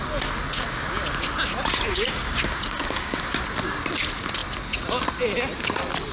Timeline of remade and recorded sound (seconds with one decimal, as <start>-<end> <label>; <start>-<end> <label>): 0.0-1.9 recorded; 1.9-3.3 remade; 3.3-6.1 recorded